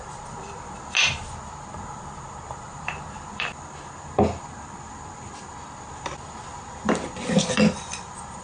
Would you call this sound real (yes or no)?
no